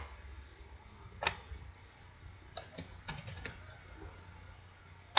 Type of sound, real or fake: real